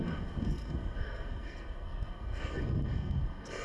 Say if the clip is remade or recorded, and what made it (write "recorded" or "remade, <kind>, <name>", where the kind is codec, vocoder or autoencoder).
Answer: remade, codec, SNAC